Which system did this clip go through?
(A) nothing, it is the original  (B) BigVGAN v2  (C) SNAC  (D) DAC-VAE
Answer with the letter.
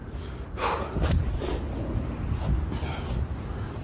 A